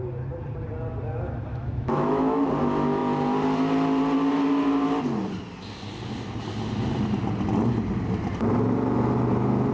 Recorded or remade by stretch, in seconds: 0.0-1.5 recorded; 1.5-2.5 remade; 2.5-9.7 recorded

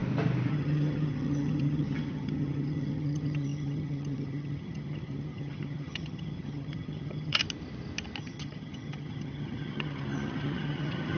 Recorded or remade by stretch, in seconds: 0.0-0.5 recorded; 0.5-7.4 remade; 7.4-8.2 recorded; 8.2-11.2 remade

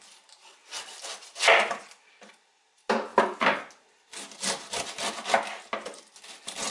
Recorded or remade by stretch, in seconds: 0.0-6.7 recorded